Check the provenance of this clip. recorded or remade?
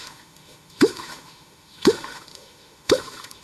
remade